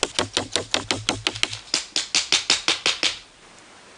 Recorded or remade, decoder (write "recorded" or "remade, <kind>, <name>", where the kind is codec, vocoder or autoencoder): recorded